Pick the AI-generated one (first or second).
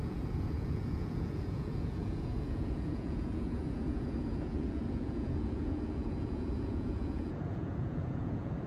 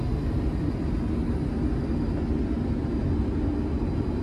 first